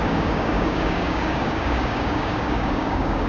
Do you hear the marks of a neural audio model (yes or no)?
yes